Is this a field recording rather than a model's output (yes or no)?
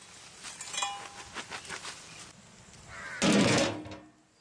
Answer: yes